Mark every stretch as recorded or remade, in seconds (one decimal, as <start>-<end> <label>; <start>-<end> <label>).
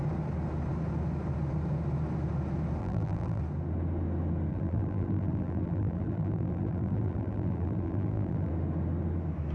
0.0-2.8 recorded; 2.8-3.4 remade; 3.4-4.5 recorded; 4.5-8.5 remade; 8.5-9.5 recorded